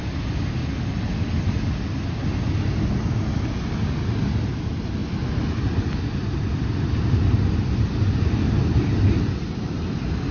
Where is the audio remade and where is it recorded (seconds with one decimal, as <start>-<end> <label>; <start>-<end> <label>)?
0.0-10.3 recorded